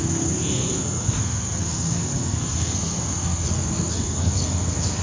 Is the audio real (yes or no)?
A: no